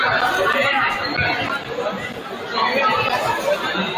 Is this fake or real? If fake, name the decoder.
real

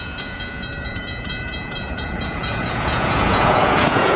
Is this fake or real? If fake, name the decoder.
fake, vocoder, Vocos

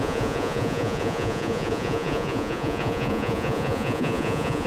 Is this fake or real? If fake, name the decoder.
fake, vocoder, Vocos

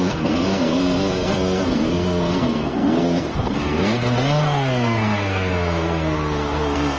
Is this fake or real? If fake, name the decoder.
fake, codec, SNAC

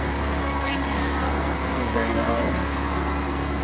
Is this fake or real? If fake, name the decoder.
fake, codec, SNAC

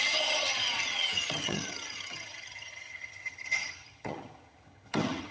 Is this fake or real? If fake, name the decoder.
fake, vocoder, HiFi-GAN